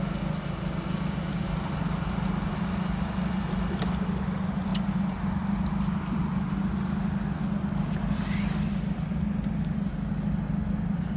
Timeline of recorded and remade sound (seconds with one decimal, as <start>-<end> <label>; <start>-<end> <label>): 0.0-4.7 recorded; 4.7-6.2 remade; 6.2-11.2 recorded